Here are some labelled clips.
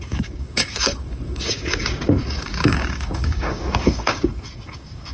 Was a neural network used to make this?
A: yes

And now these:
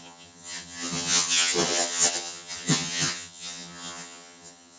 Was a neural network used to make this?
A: yes